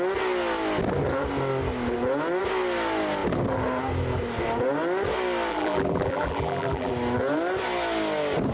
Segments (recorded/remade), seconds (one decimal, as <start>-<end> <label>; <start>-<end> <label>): 0.0-5.5 recorded; 5.5-6.9 remade; 6.9-8.5 recorded